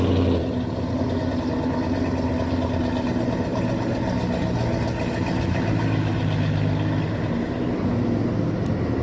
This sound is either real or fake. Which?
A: real